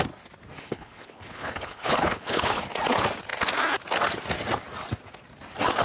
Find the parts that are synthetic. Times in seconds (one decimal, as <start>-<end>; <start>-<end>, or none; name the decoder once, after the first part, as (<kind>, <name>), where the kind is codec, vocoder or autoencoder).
0.6-2.6 (codec, HILCodec)